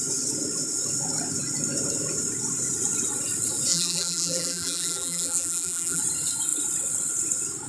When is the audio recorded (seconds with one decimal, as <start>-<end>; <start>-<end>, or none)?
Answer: 0.0-3.7; 6.0-7.7